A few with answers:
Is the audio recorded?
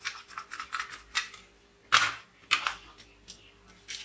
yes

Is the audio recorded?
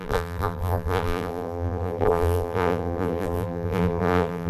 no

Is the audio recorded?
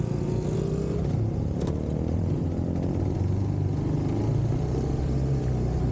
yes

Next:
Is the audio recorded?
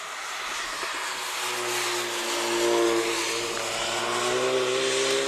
yes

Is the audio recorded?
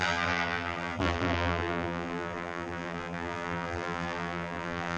no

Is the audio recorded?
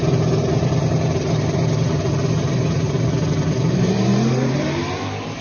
no